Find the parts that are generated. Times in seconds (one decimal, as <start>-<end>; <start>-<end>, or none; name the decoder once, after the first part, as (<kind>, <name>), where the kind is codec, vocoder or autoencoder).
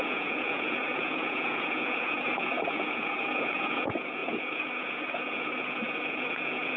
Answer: 0.0-6.8 (vocoder, Vocos)